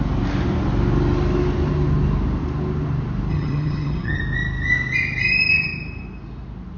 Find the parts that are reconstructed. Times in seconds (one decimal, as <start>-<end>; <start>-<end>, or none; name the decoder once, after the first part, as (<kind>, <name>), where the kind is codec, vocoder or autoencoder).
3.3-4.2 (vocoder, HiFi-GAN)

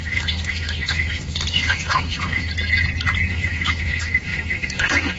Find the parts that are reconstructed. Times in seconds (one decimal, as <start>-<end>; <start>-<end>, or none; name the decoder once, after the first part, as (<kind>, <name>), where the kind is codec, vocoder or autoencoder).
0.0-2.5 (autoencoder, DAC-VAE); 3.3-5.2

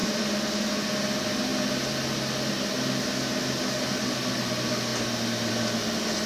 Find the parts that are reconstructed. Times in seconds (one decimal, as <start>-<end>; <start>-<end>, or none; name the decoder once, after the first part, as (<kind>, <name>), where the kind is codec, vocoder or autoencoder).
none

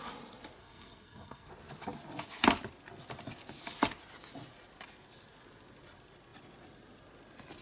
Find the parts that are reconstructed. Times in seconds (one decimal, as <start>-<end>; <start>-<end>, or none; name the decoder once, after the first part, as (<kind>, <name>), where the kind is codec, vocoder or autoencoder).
0.6-1.5 (codec, SNAC)